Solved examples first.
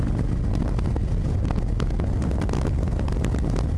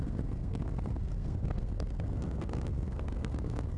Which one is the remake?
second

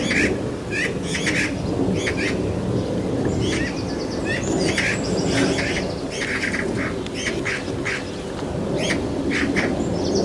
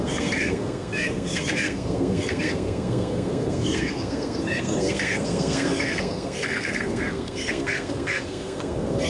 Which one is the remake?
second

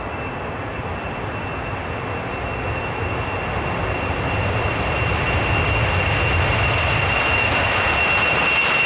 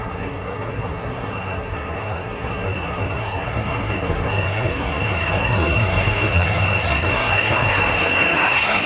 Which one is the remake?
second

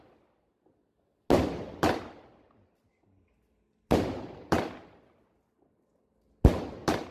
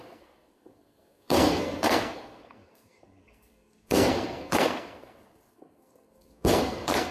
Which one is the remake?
second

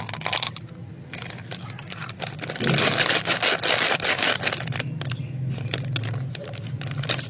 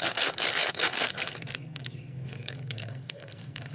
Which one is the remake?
second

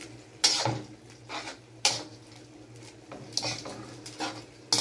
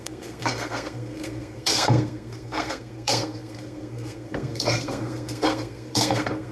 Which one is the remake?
second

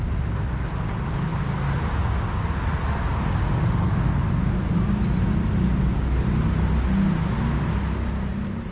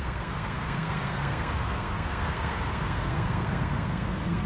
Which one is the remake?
second